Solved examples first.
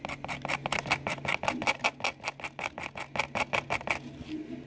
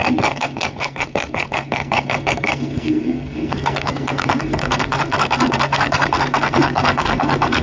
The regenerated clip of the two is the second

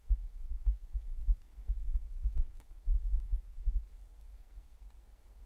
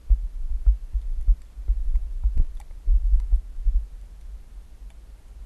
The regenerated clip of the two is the first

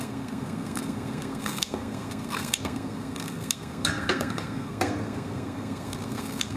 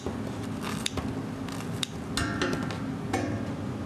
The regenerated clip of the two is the first